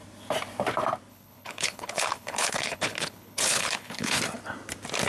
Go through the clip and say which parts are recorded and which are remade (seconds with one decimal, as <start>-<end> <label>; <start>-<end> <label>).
0.0-1.1 recorded; 1.1-4.2 remade; 4.2-5.1 recorded